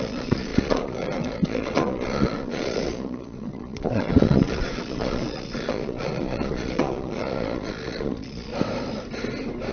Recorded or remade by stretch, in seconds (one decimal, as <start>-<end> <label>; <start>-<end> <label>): 0.0-8.5 remade; 8.5-9.7 recorded